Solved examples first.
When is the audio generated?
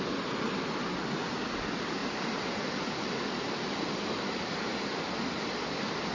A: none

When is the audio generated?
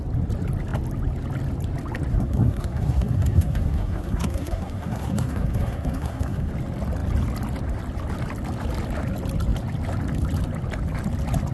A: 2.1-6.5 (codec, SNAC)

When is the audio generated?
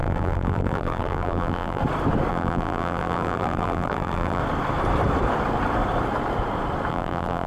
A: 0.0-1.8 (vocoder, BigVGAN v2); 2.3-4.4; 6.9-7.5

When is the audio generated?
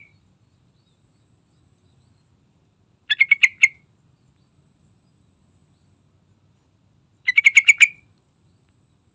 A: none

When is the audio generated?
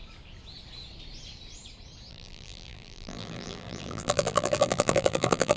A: 2.1-5.6 (vocoder, BigVGAN v2)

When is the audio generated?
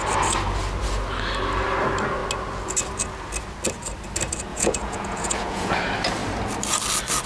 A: 4.5-5.7 (vocoder, Vocos)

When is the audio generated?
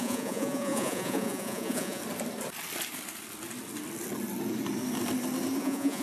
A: 0.0-2.0 (vocoder, Vocos); 5.6-6.0